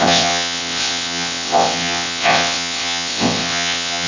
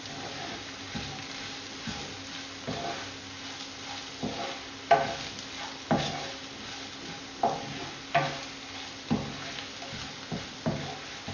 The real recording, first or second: second